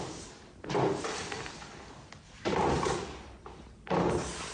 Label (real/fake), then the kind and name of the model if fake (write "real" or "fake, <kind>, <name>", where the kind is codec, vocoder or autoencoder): real